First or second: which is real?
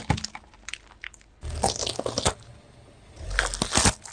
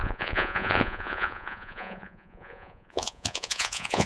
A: first